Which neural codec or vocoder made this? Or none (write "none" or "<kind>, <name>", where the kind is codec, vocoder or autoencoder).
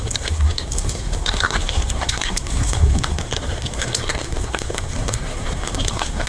codec, SNAC